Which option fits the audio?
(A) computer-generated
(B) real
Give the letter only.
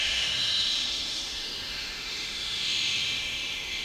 A